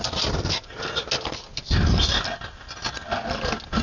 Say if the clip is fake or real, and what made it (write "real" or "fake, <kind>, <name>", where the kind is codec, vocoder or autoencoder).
real